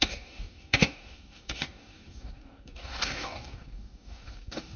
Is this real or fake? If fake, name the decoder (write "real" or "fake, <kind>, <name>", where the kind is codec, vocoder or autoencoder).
fake, codec, DAC